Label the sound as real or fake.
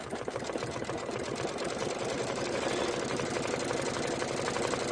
real